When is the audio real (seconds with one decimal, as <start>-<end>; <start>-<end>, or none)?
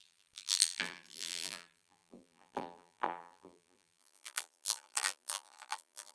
none